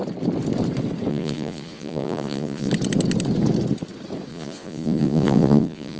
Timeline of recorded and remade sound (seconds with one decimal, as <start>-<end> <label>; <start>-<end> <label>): 0.0-1.1 recorded; 1.1-2.7 remade; 2.7-4.3 recorded; 4.3-6.0 remade